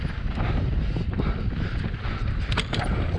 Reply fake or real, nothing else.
real